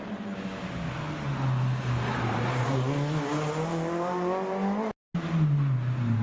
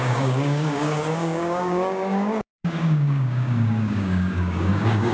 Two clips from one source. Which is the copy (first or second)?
second